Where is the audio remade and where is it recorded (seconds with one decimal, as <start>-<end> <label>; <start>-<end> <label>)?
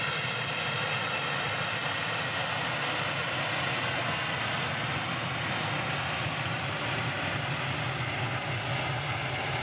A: 0.0-9.6 recorded